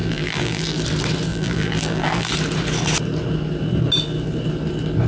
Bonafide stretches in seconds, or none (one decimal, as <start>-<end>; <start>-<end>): 0.8-1.3; 2.3-5.1